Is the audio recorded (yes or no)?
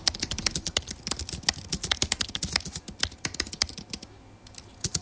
yes